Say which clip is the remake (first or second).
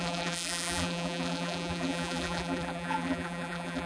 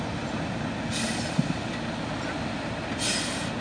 first